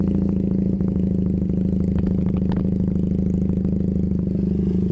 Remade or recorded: recorded